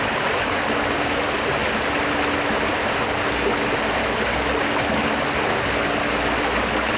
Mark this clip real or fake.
real